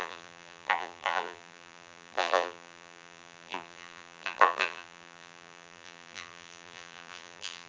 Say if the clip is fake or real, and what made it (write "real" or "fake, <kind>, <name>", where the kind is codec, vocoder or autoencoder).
fake, vocoder, BigVGAN v2